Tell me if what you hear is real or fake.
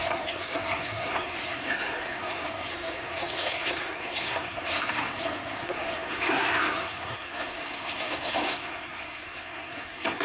fake